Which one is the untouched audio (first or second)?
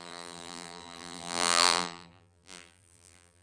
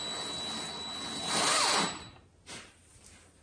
second